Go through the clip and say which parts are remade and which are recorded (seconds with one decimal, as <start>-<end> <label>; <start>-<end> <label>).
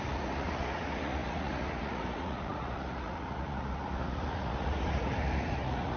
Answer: 0.0-6.0 remade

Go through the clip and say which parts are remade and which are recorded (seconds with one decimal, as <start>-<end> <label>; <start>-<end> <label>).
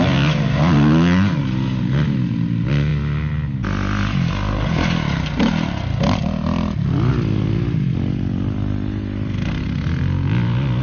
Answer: 0.0-10.8 recorded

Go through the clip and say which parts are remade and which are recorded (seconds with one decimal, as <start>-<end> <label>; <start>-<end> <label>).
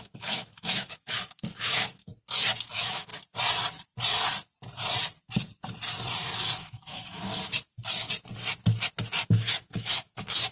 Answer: 0.0-2.1 remade; 2.1-2.7 recorded; 2.7-3.1 remade; 3.1-6.6 recorded; 6.6-7.3 remade; 7.3-9.3 recorded; 9.3-10.5 remade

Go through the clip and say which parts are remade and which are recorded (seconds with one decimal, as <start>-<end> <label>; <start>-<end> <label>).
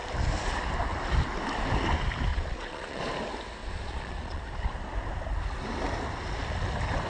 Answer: 0.0-2.3 recorded; 2.3-3.0 remade; 3.0-3.6 recorded; 3.6-4.4 remade; 4.4-7.1 recorded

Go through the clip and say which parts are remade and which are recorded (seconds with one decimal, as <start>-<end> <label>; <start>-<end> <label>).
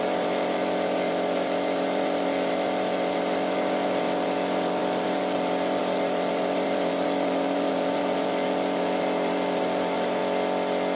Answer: 0.0-10.2 remade; 10.2-11.0 recorded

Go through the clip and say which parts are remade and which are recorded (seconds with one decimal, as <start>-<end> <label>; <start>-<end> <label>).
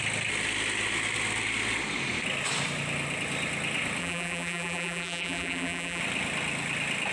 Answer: 0.0-4.0 recorded; 4.0-6.0 remade; 6.0-7.1 recorded